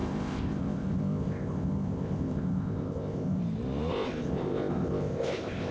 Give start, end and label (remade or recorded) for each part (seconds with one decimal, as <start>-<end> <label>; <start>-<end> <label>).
0.0-3.4 remade; 3.4-3.9 recorded; 3.9-5.7 remade